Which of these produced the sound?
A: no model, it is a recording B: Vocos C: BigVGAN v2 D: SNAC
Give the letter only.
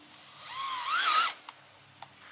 A